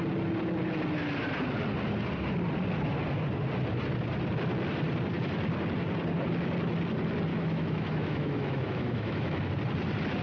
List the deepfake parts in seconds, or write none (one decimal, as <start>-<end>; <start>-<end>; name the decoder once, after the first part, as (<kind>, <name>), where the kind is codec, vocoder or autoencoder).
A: 7.3-9.5 (autoencoder, DAC-VAE)